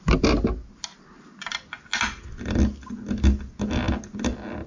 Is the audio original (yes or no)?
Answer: yes